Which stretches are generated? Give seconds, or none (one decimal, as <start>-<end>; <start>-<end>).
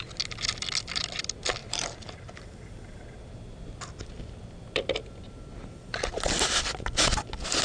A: 1.6-2.3